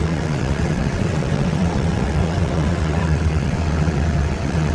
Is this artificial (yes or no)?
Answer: yes